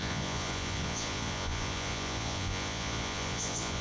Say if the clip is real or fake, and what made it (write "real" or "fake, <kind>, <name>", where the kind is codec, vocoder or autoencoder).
fake, vocoder, Vocos